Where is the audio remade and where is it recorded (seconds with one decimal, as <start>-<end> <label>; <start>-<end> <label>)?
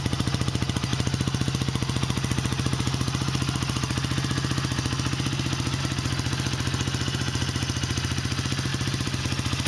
0.0-8.7 recorded; 8.7-9.2 remade; 9.2-9.7 recorded